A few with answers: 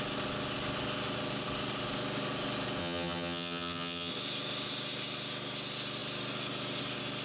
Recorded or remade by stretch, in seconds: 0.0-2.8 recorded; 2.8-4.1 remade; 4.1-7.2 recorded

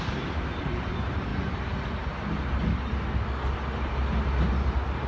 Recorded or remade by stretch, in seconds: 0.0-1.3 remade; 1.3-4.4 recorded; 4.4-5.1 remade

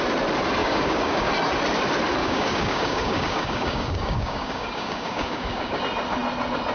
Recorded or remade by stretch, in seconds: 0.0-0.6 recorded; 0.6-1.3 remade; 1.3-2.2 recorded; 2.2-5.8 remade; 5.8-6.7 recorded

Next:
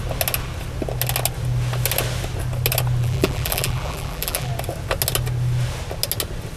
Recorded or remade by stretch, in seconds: 0.0-3.0 recorded; 3.0-4.5 remade; 4.5-6.6 recorded

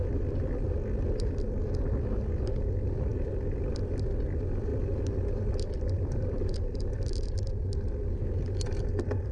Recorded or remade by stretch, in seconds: 0.0-4.7 recorded; 4.7-6.5 remade; 6.5-9.3 recorded